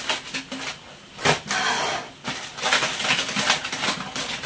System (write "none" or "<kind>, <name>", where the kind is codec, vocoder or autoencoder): none